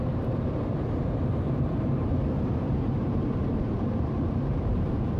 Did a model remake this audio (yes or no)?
yes